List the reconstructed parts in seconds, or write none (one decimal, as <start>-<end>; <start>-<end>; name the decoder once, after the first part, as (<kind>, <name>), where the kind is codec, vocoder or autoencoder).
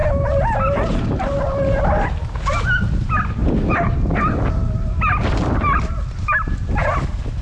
none